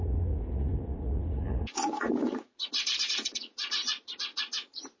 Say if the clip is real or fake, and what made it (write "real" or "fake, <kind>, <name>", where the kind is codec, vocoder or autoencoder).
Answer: fake, vocoder, Vocos